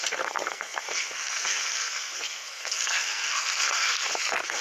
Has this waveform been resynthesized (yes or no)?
yes